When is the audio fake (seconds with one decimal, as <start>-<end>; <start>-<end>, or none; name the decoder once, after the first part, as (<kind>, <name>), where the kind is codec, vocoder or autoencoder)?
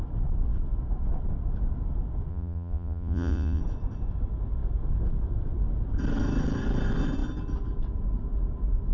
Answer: 2.3-3.6 (vocoder, Vocos)